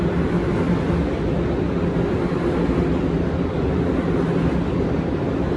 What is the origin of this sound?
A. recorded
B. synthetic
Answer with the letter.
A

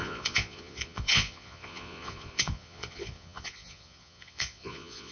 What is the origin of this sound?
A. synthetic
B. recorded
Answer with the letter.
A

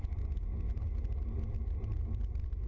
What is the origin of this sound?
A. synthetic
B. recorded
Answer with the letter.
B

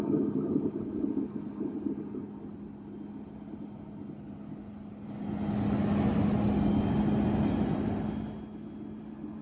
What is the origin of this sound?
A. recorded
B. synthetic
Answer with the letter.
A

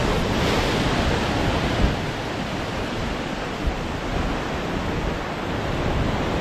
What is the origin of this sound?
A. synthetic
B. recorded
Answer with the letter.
B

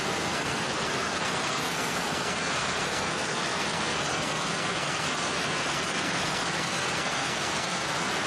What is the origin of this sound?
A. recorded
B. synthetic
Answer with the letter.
B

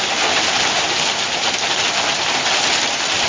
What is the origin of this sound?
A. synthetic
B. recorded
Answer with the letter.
B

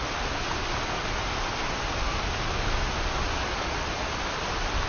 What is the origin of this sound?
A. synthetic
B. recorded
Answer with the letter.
B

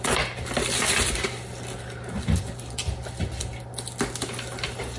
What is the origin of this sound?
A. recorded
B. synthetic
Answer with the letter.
A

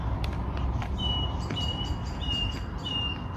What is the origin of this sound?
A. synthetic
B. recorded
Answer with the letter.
B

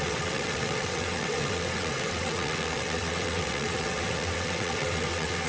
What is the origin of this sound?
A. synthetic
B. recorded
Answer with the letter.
A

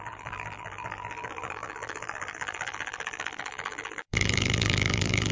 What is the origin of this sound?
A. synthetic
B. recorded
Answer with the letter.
A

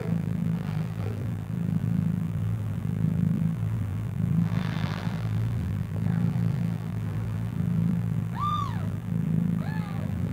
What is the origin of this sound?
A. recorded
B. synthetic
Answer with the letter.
B